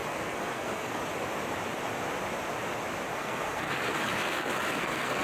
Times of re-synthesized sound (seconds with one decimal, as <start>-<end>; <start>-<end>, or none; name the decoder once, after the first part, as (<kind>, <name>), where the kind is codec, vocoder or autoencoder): 0.0-1.0 (codec, SNAC); 3.1-5.2